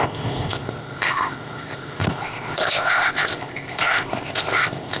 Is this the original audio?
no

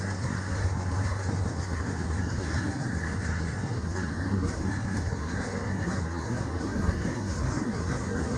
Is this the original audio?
no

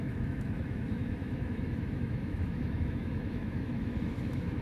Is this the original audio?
no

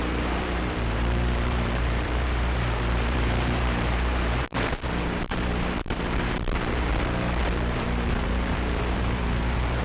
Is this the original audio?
no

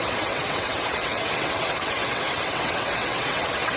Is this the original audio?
no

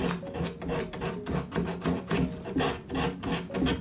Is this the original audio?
yes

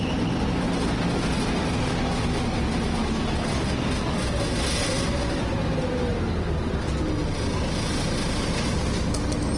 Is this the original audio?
yes